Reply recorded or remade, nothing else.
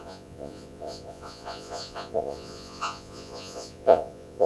remade